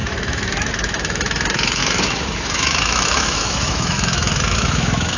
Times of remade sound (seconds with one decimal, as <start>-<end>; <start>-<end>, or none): 0.0-5.2